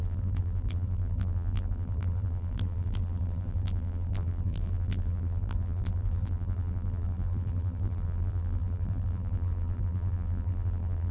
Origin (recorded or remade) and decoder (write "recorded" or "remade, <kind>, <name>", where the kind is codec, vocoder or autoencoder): remade, vocoder, BigVGAN v2